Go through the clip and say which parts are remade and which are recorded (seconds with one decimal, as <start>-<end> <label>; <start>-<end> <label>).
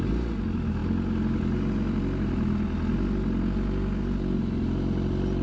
0.0-5.4 recorded